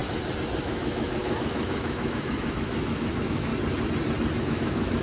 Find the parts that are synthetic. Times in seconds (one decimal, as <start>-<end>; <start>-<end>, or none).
0.6-3.5; 4.4-5.0